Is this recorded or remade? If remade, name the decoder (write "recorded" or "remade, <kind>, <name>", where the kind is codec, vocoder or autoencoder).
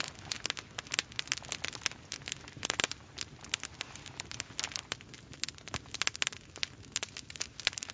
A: recorded